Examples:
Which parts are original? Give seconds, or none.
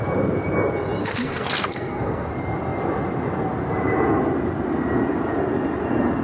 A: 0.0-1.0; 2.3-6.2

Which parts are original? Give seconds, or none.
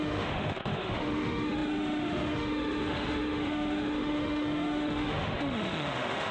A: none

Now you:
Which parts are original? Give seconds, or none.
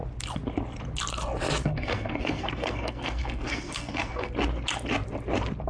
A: 0.0-1.6; 4.3-5.7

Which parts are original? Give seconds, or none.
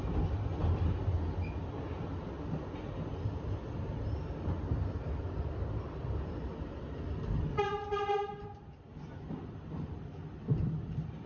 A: 0.0-11.3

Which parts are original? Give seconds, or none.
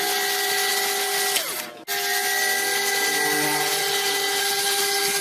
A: 0.0-5.2